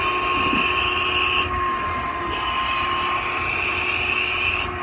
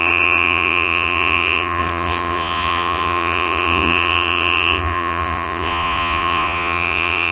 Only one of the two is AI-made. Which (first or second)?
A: second